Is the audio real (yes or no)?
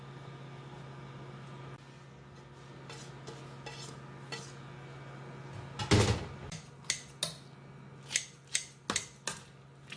yes